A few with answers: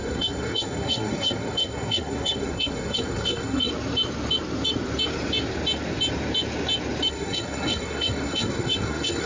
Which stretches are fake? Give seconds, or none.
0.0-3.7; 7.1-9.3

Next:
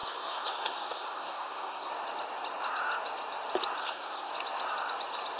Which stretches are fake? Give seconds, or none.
0.0-1.9; 3.8-4.3

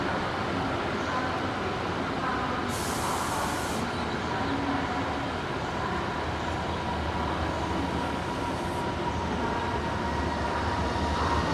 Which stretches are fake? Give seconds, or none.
none

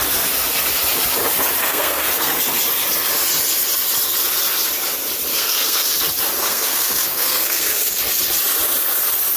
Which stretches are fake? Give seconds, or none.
1.6-2.4; 5.3-6.0; 6.4-8.0

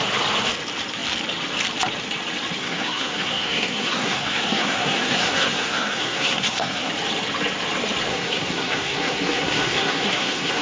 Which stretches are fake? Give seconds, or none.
2.6-6.9; 8.1-10.6

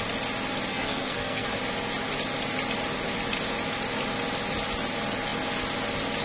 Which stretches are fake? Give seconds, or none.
0.7-1.6